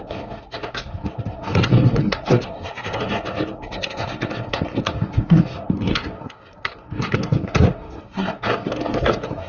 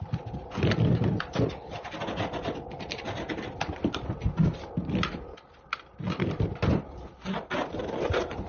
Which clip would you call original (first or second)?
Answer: second